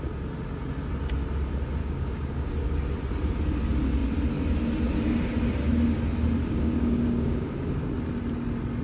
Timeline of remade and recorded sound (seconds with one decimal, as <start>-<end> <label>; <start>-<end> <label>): 0.0-1.8 recorded; 1.8-2.5 remade; 2.5-6.4 recorded; 6.4-7.8 remade; 7.8-8.8 recorded